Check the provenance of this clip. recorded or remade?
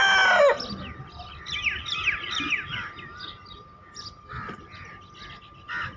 recorded